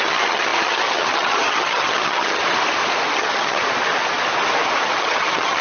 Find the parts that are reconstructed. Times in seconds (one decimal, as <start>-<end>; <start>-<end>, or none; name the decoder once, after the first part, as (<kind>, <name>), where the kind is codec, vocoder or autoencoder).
0.0-2.4 (vocoder, HiFi-GAN); 3.1-3.6; 5.0-5.6